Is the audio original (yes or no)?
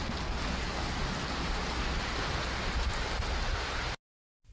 yes